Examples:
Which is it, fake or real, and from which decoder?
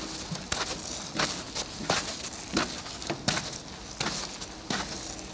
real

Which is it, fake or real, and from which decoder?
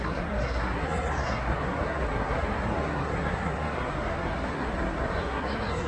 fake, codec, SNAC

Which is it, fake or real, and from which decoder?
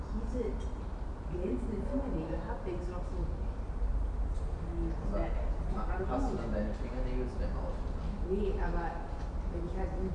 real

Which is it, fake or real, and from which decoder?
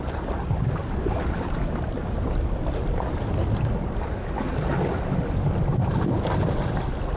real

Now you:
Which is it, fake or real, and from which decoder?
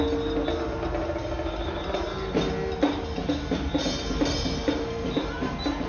real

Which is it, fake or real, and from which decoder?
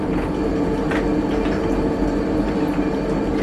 real